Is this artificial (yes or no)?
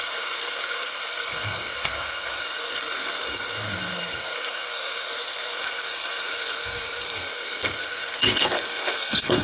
yes